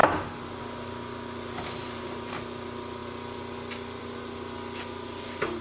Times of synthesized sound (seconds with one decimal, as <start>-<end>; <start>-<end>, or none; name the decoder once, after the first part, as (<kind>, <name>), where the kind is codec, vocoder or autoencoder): 1.8-2.3 (vocoder, BigVGAN v2)